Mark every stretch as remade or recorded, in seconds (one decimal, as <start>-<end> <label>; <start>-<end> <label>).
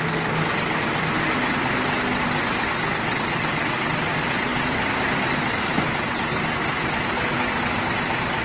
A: 0.0-8.4 recorded